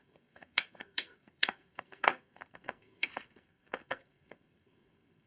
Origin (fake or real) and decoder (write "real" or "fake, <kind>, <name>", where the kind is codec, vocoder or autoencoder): fake, codec, SNAC